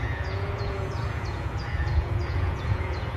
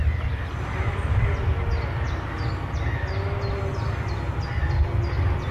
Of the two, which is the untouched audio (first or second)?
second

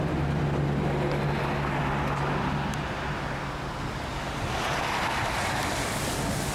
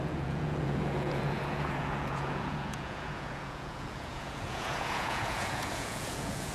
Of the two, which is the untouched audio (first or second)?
first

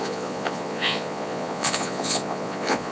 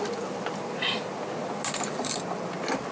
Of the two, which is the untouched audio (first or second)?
second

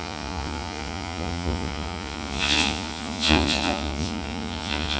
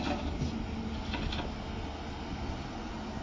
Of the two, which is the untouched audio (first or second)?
second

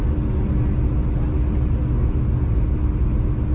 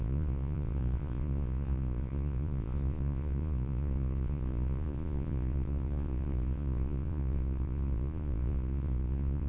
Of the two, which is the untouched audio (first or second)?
first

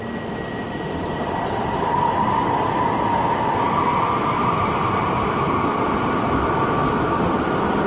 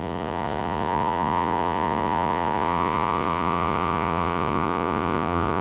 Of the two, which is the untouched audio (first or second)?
first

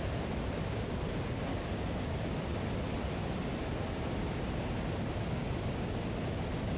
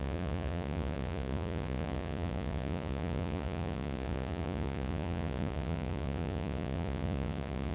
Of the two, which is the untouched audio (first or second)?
first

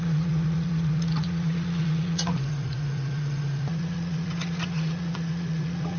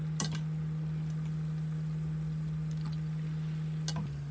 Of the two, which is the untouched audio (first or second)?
second